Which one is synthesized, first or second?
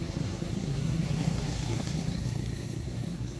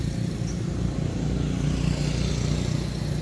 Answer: first